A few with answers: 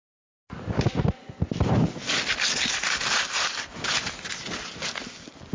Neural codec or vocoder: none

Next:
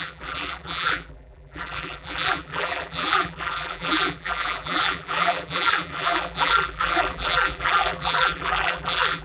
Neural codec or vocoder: vocoder, BigVGAN v2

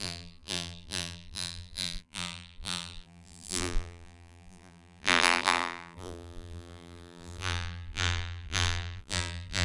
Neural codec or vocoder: vocoder, BigVGAN v2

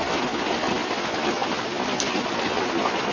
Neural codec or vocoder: none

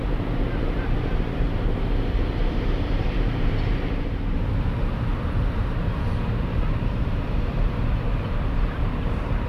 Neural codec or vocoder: vocoder, BigVGAN v2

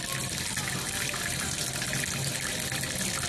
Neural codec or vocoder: none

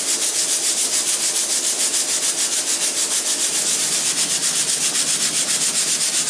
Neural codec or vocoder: none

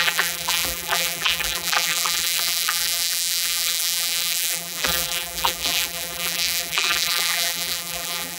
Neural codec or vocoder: vocoder, BigVGAN v2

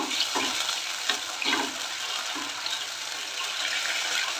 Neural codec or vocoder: none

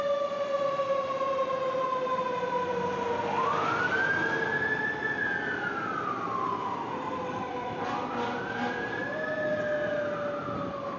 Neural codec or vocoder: none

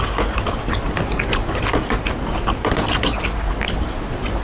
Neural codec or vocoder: none